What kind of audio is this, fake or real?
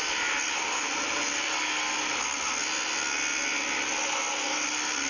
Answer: real